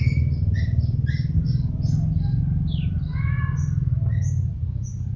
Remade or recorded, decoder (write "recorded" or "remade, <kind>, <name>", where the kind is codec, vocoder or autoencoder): recorded